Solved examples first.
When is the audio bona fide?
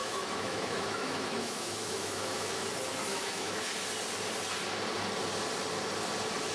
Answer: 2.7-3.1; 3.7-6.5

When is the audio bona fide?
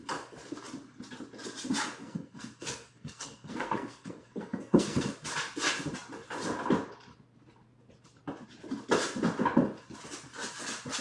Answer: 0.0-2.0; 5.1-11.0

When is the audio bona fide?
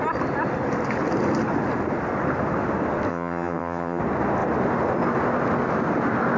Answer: 0.0-3.1; 4.0-6.4